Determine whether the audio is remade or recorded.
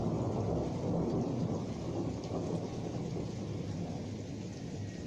recorded